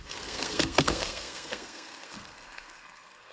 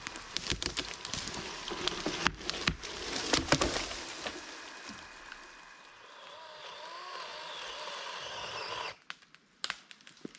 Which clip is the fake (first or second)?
first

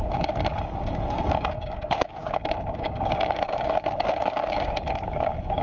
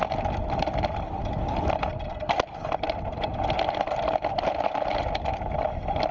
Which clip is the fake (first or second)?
first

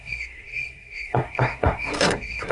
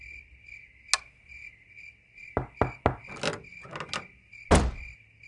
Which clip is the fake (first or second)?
first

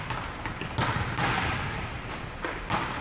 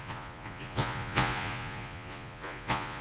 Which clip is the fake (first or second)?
second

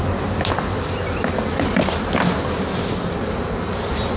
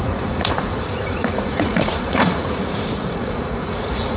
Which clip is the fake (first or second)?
second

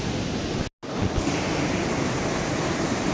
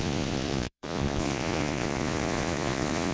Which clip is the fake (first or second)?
second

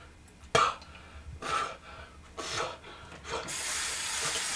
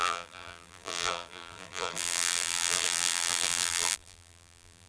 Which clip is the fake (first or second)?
second